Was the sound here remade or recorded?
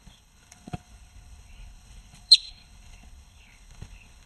remade